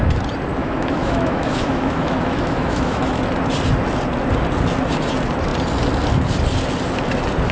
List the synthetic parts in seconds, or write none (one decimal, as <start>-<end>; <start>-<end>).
0.6-3.2